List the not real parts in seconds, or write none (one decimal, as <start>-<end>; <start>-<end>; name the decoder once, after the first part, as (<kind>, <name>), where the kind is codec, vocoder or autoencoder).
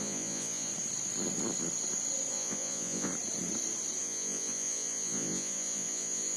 0.0-0.7 (vocoder, Vocos); 2.3-3.1; 4.0-6.4